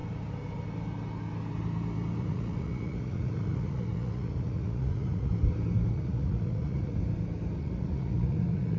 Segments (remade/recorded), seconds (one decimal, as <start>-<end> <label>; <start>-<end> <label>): 0.0-2.2 recorded; 2.2-5.3 remade; 5.3-5.9 recorded; 5.9-7.0 remade; 7.0-7.6 recorded; 7.6-8.8 remade